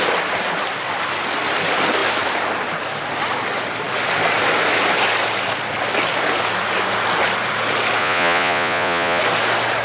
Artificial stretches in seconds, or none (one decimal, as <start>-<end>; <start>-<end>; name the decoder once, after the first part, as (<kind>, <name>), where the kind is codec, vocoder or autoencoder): 8.0-9.2 (vocoder, Vocos)